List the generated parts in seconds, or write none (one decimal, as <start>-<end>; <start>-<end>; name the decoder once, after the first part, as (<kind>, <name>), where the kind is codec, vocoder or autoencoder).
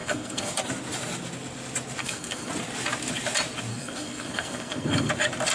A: 0.0-0.5 (codec, SNAC); 2.0-2.5; 3.7-5.1